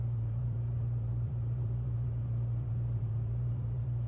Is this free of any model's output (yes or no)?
no